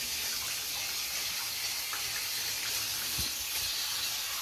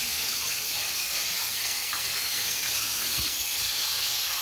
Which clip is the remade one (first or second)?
second